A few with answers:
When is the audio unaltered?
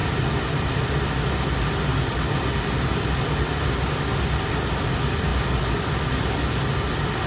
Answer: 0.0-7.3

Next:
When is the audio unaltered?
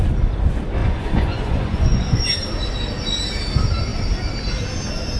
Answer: 0.0-0.8; 2.2-5.2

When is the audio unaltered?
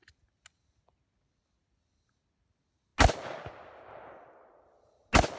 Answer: 0.0-5.4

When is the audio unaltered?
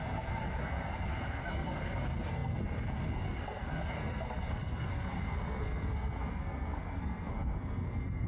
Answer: none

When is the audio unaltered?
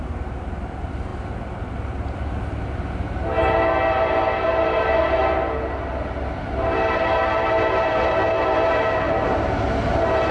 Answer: 0.0-10.3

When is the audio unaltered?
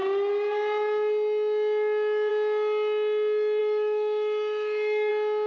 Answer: 0.0-3.6; 5.1-5.5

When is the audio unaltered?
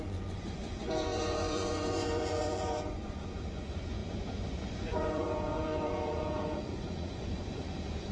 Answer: none